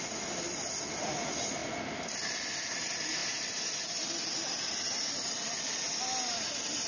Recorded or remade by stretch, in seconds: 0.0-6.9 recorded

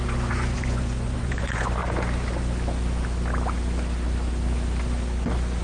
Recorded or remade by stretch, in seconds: 0.0-1.8 remade; 1.8-5.6 recorded

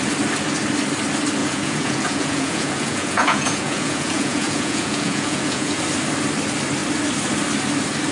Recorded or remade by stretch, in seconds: 0.0-1.4 recorded; 1.4-5.8 remade; 5.8-8.1 recorded

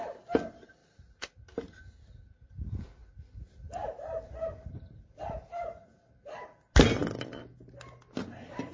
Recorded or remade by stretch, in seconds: 0.0-8.7 recorded

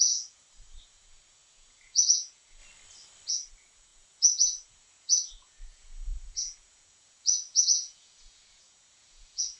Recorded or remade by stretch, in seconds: 0.0-2.6 remade; 2.6-3.3 recorded; 3.3-9.6 remade